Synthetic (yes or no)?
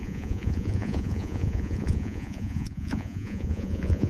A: yes